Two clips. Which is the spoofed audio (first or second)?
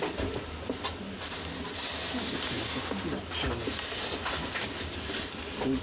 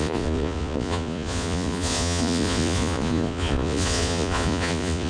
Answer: second